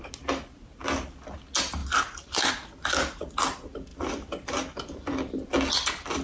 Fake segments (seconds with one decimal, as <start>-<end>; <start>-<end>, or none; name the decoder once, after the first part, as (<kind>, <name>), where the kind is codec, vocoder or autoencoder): 1.8-2.5 (vocoder, BigVGAN v2); 3.9-5.5